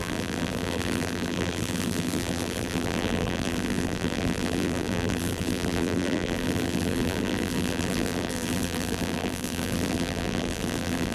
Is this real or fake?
fake